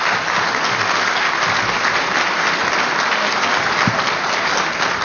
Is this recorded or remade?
recorded